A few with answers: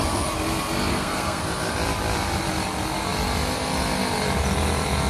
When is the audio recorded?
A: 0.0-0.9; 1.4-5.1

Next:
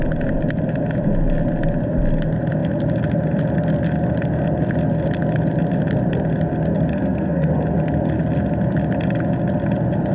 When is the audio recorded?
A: 0.0-6.9; 7.5-10.1

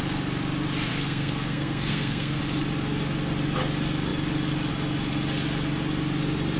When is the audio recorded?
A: 0.0-0.9; 2.4-6.6

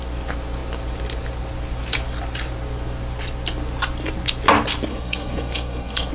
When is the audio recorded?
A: 0.0-4.9

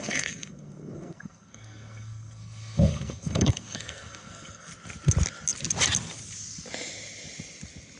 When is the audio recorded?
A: 4.7-8.0

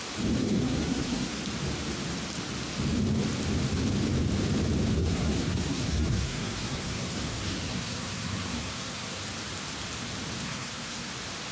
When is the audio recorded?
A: 0.0-0.4; 1.4-4.9; 9.2-10.4; 11.1-11.5